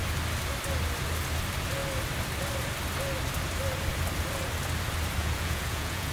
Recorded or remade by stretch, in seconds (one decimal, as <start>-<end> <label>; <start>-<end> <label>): 0.0-5.2 recorded; 5.2-6.1 remade